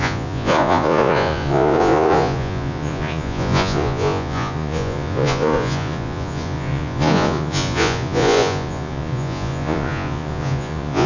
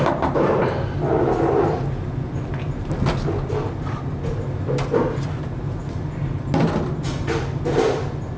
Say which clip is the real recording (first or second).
second